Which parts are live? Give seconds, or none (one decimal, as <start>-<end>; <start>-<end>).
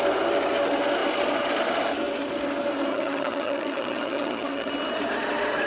0.0-2.9; 4.7-5.7